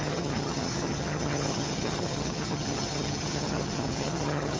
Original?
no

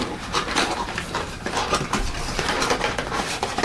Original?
no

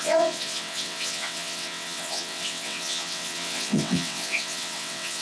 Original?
no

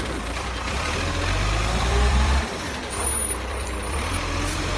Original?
no